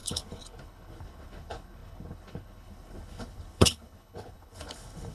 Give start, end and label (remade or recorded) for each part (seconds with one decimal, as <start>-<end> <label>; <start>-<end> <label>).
0.0-5.1 remade